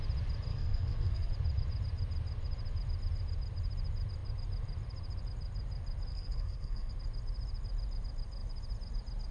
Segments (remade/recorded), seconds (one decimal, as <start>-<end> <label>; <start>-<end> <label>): 0.0-0.5 recorded; 0.5-1.3 remade; 1.3-6.1 recorded; 6.1-6.9 remade; 6.9-9.3 recorded